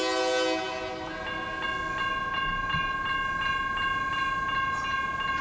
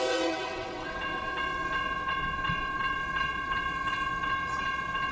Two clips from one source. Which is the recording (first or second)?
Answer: first